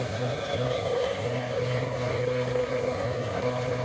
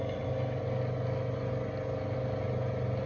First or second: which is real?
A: second